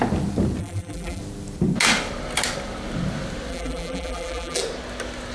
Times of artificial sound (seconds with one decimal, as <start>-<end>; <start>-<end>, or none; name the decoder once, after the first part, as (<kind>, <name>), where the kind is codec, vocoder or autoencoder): 0.6-1.2 (vocoder, BigVGAN v2); 3.5-4.6